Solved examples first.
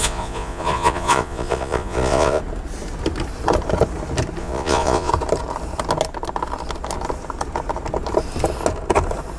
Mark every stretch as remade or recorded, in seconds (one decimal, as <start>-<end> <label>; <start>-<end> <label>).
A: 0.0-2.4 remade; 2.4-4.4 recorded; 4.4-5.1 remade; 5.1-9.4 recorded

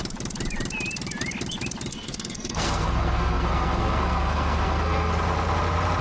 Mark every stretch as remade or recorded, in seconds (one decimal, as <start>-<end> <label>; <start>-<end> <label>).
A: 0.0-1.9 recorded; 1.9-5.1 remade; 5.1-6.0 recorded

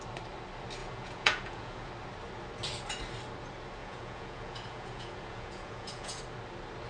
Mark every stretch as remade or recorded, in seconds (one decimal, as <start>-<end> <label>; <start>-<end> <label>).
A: 0.0-0.8 recorded; 0.8-1.9 remade; 1.9-3.8 recorded; 3.8-6.2 remade; 6.2-6.9 recorded